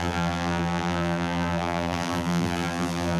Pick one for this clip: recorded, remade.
remade